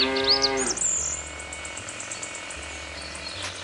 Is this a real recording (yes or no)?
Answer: yes